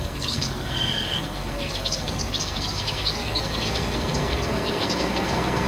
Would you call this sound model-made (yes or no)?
yes